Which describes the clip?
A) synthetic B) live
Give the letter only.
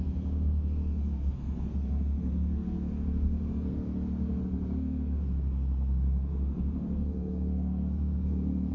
A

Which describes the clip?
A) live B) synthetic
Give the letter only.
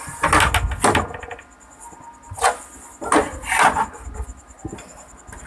A